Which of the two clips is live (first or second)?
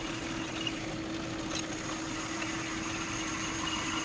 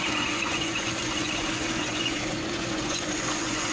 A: first